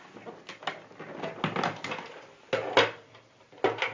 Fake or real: real